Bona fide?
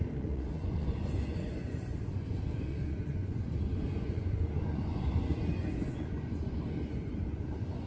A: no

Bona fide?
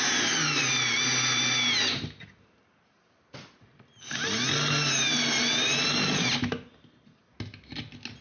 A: yes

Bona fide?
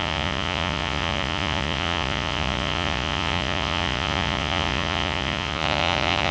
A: no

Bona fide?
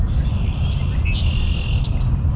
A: yes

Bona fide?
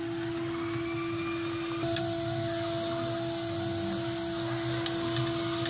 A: yes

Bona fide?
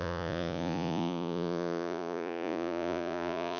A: no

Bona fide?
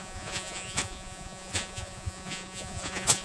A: no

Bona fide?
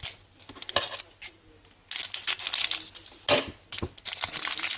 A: yes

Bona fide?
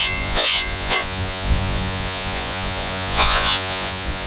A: no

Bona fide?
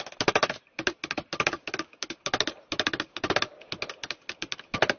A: yes